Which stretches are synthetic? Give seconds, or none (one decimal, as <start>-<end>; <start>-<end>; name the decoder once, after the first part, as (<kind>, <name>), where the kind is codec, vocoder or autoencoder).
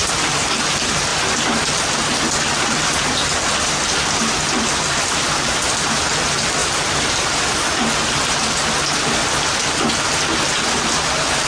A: none